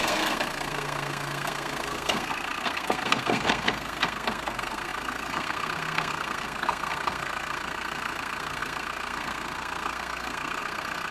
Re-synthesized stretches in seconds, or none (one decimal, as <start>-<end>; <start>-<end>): 0.0-11.1